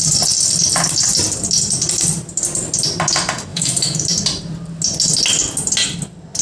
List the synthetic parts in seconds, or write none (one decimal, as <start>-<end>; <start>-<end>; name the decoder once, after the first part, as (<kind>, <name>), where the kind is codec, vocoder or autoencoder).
3.5-4.0 (autoencoder, DAC-VAE)